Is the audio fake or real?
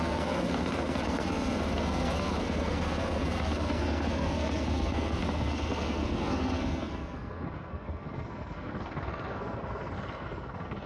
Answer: fake